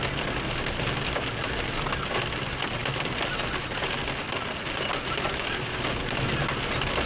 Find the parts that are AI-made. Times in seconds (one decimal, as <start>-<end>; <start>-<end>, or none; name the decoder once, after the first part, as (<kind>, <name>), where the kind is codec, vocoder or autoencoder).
none

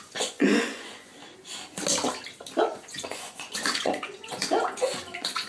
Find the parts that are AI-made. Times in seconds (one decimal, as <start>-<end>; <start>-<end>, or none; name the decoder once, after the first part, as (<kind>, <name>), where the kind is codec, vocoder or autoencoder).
0.0-1.1 (vocoder, Vocos); 2.6-5.5

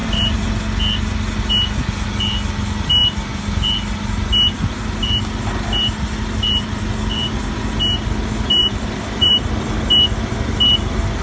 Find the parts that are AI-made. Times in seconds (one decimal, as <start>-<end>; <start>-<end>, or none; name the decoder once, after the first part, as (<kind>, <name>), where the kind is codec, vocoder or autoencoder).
0.0-0.5 (vocoder, BigVGAN v2); 8.6-9.4

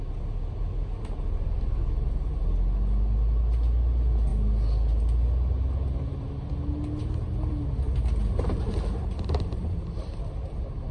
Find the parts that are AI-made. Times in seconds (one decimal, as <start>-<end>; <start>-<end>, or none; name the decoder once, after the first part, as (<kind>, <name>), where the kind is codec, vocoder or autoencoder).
none